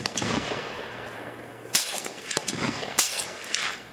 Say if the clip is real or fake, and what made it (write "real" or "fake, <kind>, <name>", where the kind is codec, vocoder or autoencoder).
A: fake, codec, SNAC